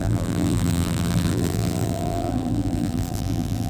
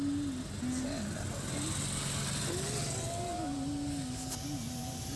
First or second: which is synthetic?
first